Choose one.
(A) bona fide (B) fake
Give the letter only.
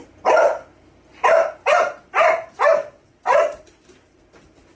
A